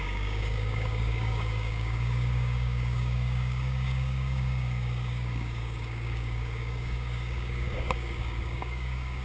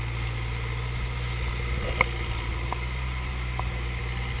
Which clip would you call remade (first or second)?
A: first